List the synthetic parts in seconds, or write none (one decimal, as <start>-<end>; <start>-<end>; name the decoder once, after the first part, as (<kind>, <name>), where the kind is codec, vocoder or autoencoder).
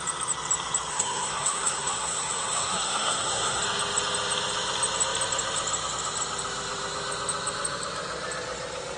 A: 0.9-3.6 (codec, SNAC)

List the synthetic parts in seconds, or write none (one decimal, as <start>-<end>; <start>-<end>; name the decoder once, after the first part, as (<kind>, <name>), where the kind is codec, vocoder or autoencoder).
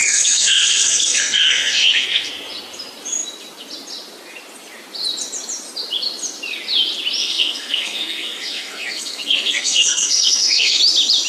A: 0.0-2.3 (codec, SNAC); 7.2-10.8